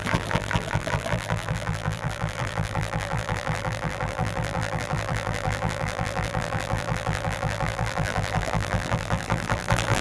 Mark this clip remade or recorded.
remade